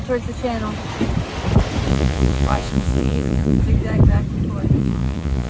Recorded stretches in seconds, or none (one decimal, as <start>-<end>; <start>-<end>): 0.0-1.9; 3.6-4.8